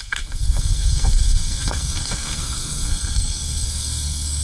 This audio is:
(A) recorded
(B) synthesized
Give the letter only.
B